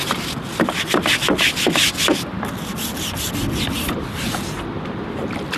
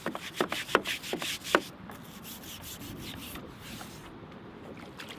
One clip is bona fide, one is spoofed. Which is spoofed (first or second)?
second